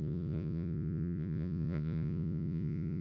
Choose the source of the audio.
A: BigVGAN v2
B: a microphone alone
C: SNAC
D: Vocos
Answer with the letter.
D